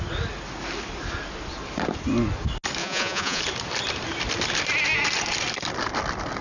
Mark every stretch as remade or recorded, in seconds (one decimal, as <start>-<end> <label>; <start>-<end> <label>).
0.0-2.8 recorded; 2.8-3.4 remade; 3.4-6.4 recorded